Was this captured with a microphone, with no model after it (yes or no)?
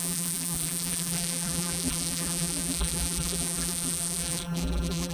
no